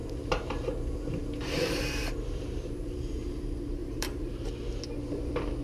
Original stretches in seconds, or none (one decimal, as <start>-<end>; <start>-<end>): 3.4-3.8; 4.5-5.6